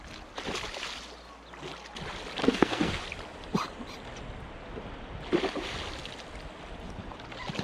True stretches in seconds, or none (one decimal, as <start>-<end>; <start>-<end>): 0.0-2.4; 3.0-7.6